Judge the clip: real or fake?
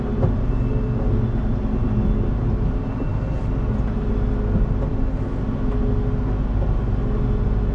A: real